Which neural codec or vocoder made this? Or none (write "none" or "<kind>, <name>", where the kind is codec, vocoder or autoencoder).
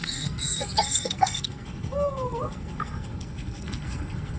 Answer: codec, SNAC